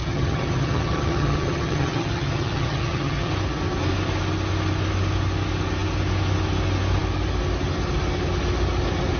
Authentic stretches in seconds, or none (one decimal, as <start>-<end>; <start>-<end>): 3.3-9.2